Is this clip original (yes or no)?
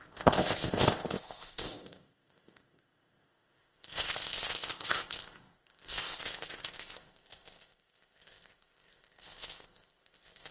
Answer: no